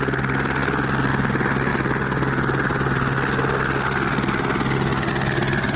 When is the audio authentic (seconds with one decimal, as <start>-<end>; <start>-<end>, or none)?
0.0-5.8